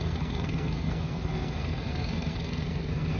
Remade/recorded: remade